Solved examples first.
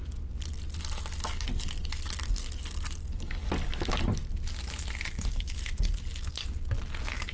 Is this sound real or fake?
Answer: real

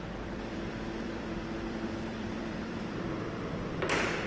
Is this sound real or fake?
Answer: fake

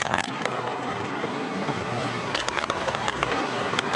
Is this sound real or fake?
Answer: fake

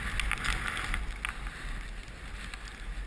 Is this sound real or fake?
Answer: real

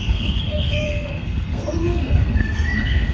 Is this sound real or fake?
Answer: fake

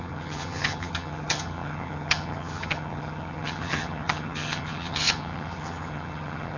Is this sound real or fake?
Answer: fake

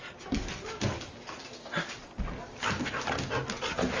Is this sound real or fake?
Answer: real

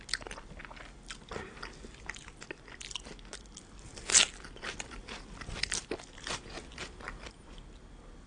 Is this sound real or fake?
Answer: real